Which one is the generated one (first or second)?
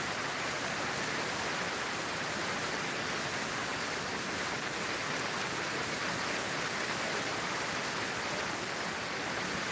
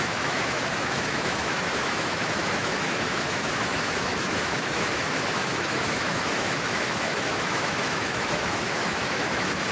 second